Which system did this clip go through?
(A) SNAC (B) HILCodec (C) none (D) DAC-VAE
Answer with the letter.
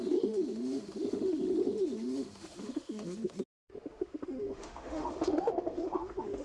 D